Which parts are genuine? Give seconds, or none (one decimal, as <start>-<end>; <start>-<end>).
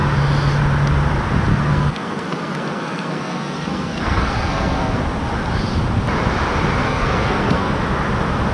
0.0-1.5; 5.0-6.8; 7.7-8.5